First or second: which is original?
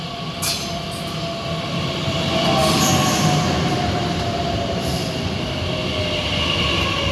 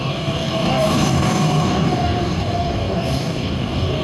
first